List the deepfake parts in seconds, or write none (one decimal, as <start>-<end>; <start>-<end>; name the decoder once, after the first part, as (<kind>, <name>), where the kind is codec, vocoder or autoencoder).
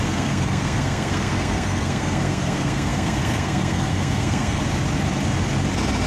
0.0-4.6 (codec, SNAC)